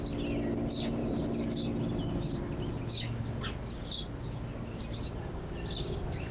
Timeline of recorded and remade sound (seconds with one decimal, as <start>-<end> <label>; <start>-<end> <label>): 0.0-6.3 recorded